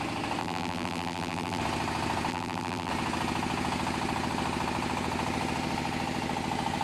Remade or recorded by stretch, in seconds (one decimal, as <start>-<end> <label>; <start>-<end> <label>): 0.0-0.4 recorded; 0.4-1.6 remade; 1.6-2.3 recorded; 2.3-2.9 remade; 2.9-6.8 recorded